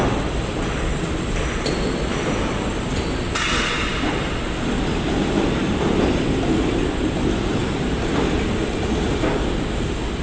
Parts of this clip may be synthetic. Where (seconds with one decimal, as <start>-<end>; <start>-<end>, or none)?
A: 2.1-2.7; 7.5-8.3